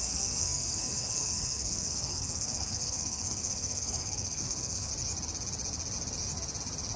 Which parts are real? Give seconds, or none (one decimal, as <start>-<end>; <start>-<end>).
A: 4.9-7.0